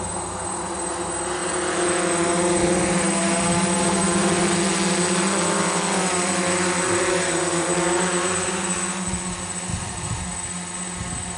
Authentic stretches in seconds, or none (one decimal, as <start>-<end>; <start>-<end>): 0.0-9.7; 10.2-11.4